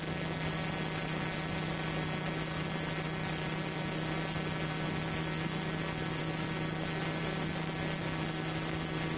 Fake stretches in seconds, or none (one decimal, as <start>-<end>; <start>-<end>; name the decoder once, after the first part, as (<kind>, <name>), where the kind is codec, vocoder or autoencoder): none